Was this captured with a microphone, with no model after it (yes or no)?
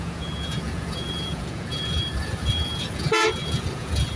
no